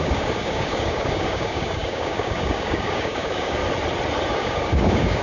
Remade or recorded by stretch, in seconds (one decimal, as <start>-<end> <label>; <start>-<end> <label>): 0.0-3.6 remade; 3.6-4.3 recorded; 4.3-5.2 remade